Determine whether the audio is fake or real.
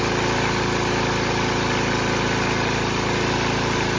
real